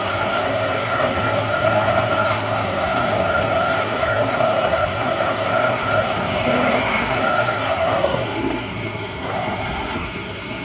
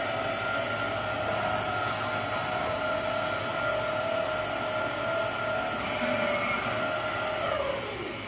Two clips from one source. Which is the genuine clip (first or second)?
second